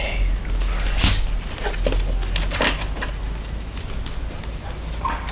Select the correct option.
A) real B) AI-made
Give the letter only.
A